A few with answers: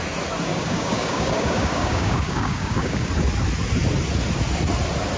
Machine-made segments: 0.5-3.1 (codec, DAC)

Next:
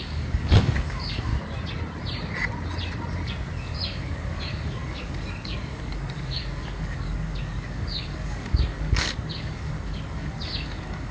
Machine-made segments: 0.0-1.3 (codec, DAC); 3.6-11.1

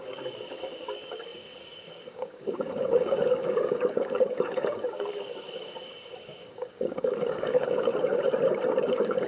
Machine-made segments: 0.0-7.9 (codec, DAC); 8.8-9.3

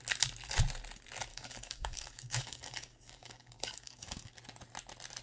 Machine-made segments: 1.3-4.4 (codec, DAC)

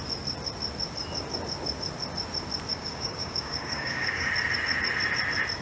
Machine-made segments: 2.7-4.3 (codec, DAC)

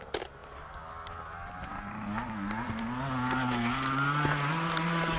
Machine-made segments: none

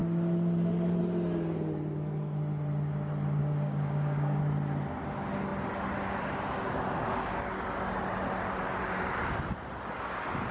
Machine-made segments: 3.4-4.4 (codec, DAC)